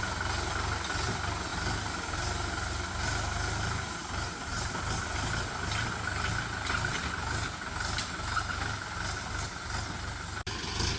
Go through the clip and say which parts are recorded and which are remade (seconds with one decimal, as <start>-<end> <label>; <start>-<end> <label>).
0.0-11.0 recorded